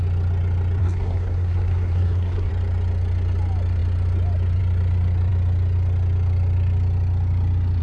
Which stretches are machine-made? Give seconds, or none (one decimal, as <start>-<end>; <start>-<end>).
0.8-2.5